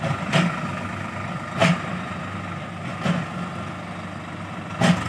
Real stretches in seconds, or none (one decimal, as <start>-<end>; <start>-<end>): 0.0-5.1